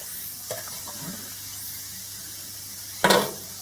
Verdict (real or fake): real